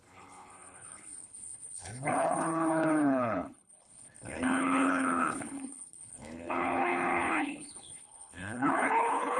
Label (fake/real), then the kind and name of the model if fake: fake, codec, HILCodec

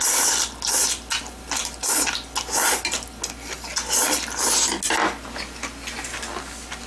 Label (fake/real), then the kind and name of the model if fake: real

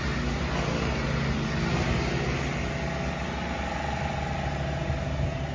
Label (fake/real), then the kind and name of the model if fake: real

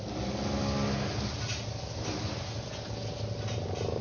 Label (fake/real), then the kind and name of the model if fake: real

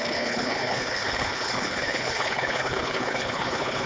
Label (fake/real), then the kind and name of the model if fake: fake, codec, HILCodec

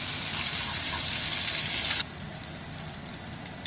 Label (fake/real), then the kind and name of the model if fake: real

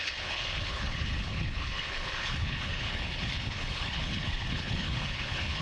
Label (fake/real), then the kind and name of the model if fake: fake, codec, HILCodec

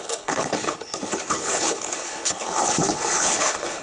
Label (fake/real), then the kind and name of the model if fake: fake, codec, HILCodec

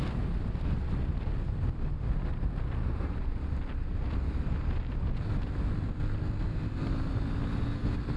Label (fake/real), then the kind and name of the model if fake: real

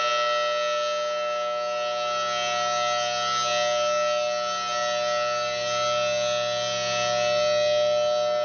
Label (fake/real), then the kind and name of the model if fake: real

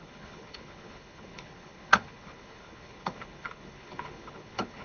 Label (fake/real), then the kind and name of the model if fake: fake, codec, HILCodec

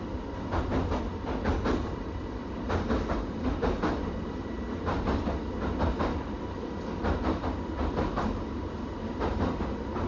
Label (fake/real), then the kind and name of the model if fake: real